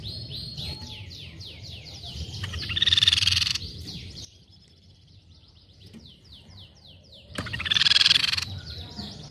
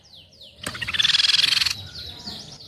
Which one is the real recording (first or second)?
second